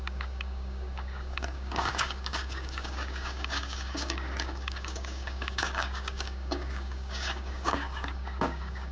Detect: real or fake fake